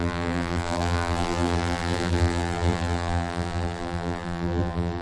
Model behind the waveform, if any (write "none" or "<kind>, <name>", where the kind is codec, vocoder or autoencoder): vocoder, BigVGAN v2